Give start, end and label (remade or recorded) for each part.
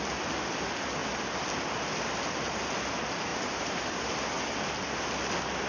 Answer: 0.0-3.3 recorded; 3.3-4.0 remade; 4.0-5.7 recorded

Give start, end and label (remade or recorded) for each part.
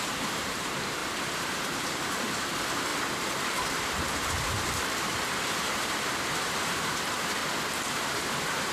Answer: 0.0-7.4 remade; 7.4-7.9 recorded; 7.9-8.7 remade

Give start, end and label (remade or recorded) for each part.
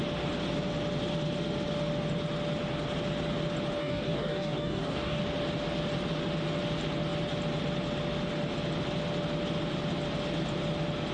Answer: 0.0-3.8 recorded; 3.8-5.2 remade; 5.2-11.1 recorded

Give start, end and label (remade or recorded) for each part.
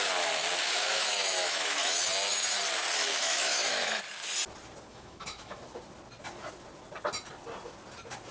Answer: 0.0-0.6 recorded; 0.6-2.0 remade; 2.0-3.2 recorded; 3.2-4.0 remade; 4.0-4.9 recorded; 4.9-5.6 remade; 5.6-8.3 recorded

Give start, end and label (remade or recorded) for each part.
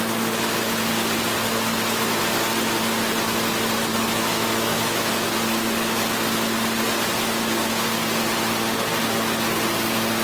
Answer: 0.0-3.9 recorded; 3.9-5.1 remade; 5.1-10.2 recorded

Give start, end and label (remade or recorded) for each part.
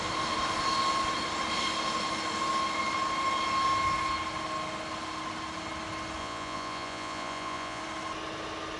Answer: 0.0-6.2 recorded; 6.2-7.8 remade; 7.8-8.8 recorded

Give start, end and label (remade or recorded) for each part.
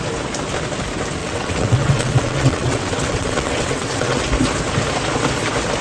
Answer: 0.0-1.2 recorded; 1.2-4.2 remade; 4.2-5.8 recorded